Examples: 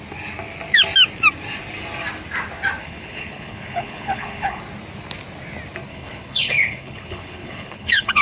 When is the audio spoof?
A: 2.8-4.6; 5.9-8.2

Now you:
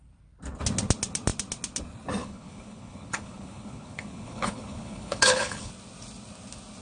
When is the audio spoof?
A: 2.2-5.7

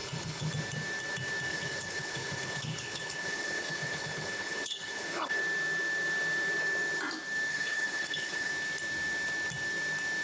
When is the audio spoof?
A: 0.0-0.5; 1.5-5.4; 7.5-8.5

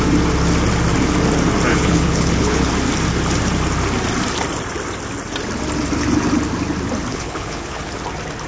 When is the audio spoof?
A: 1.7-2.7; 7.1-7.9

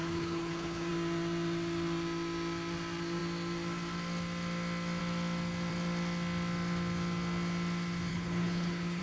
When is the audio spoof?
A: 0.0-0.9; 8.1-9.0

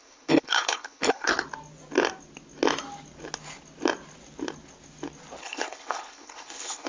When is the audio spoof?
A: 0.0-1.3; 5.4-6.9